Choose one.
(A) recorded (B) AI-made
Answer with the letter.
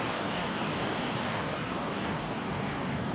B